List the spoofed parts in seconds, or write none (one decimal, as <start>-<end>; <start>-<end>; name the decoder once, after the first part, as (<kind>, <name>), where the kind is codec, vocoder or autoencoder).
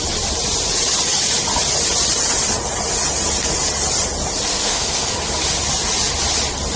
4.5-5.1 (codec, SNAC)